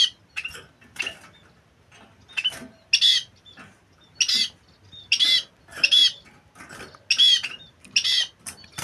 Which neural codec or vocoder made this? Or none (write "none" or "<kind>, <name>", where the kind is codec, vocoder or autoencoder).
none